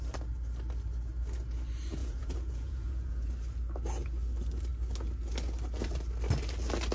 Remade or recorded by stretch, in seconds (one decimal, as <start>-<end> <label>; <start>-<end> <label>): 0.0-2.0 recorded; 2.0-3.3 remade; 3.3-6.9 recorded